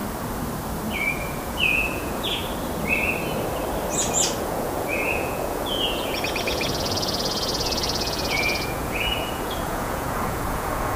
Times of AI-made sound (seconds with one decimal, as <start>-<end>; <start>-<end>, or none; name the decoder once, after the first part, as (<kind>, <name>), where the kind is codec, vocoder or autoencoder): 1.1-2.4 (vocoder, Vocos); 4.4-11.0